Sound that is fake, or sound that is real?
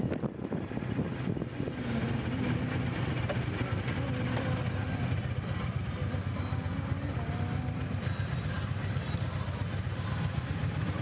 real